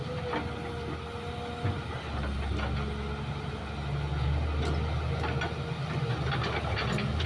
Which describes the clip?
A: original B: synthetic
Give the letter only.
A